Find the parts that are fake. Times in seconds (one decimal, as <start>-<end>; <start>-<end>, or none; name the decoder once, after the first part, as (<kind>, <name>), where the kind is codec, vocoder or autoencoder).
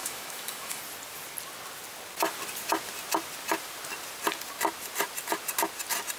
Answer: 0.0-0.8 (autoencoder, DAC-VAE)